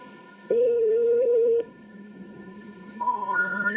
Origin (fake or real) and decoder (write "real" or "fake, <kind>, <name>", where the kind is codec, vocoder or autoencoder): fake, codec, SNAC